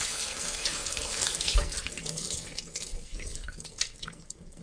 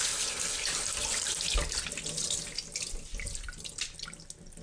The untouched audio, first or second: second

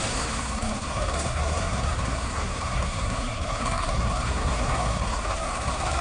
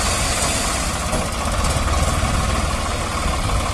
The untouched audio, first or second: second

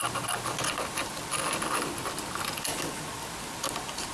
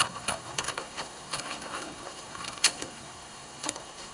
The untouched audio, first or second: first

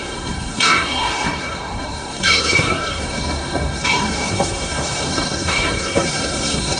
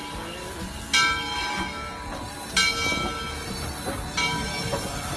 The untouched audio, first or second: second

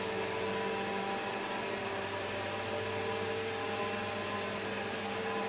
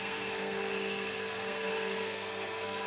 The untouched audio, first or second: first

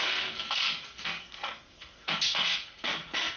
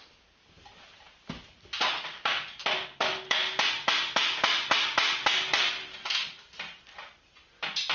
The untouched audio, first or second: second